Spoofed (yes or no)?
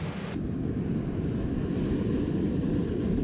yes